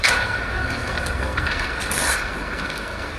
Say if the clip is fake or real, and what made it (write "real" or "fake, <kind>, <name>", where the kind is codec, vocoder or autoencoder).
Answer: fake, codec, SNAC